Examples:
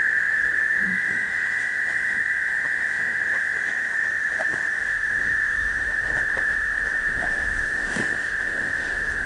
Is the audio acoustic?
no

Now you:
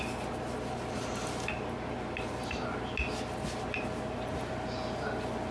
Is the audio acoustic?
yes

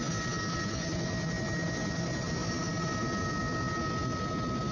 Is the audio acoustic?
yes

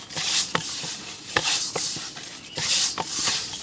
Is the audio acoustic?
yes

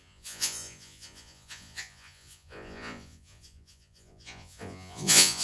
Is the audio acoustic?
no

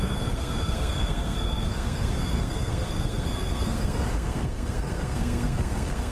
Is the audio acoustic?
no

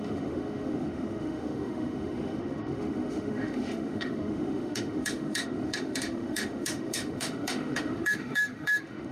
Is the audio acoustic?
no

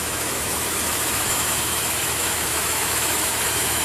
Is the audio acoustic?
no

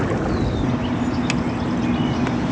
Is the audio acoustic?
yes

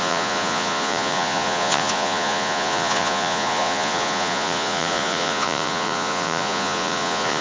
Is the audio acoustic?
no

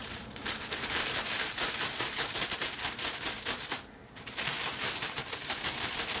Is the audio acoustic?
no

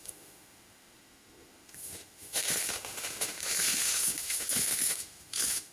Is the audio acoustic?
no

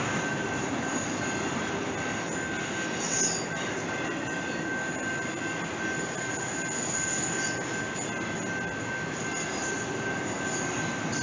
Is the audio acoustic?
yes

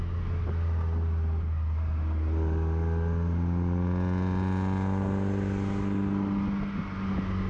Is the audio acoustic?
yes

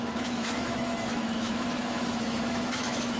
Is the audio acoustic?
no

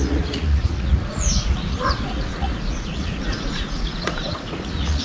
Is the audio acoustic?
no